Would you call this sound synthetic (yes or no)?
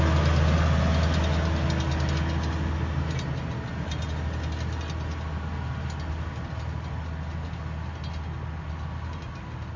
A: no